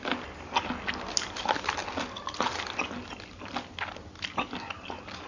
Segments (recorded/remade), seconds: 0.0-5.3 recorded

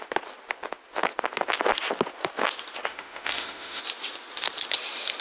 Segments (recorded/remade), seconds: 0.0-2.9 recorded; 2.9-3.8 remade; 3.8-5.2 recorded

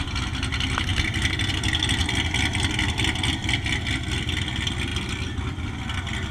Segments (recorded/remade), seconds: 0.0-0.9 recorded; 0.9-1.5 remade; 1.5-2.0 recorded; 2.0-3.9 remade; 3.9-4.9 recorded; 4.9-5.7 remade; 5.7-6.3 recorded

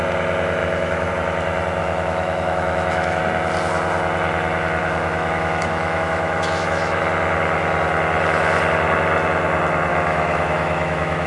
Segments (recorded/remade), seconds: 0.0-0.6 recorded; 0.6-1.1 remade; 1.1-1.8 recorded; 1.8-3.2 remade; 3.2-4.8 recorded; 4.8-7.0 remade; 7.0-9.9 recorded; 9.9-11.3 remade

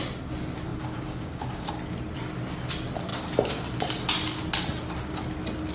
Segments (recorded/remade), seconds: 0.0-0.7 recorded; 0.7-1.7 remade; 1.7-5.7 recorded

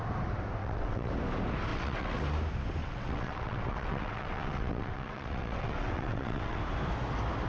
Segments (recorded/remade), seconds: 0.0-0.6 recorded; 0.6-1.1 remade; 1.1-1.7 recorded; 1.7-2.2 remade; 2.2-2.8 recorded; 2.8-6.6 remade; 6.6-7.5 recorded